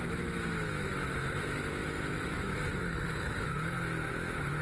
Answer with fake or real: fake